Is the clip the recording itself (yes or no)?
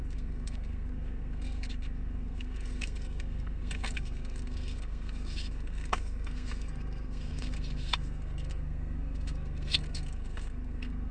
no